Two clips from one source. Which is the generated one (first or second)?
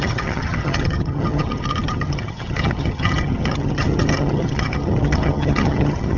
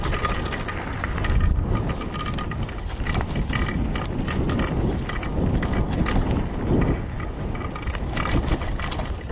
first